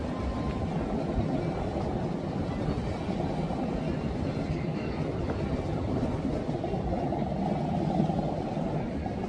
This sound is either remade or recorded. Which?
recorded